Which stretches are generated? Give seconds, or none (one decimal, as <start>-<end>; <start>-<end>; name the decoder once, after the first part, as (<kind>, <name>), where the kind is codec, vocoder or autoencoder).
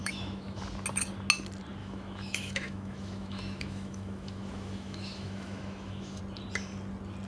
0.0-0.6 (autoencoder, DAC-VAE); 1.8-6.2